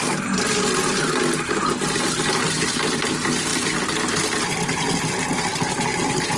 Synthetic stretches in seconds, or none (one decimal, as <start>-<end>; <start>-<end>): none